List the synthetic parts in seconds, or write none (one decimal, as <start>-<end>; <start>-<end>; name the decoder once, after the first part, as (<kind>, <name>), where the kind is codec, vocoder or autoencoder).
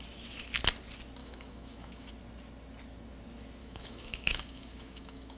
1.2-2.1 (autoencoder, DAC-VAE); 3.6-5.4